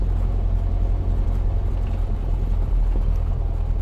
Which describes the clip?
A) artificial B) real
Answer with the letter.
B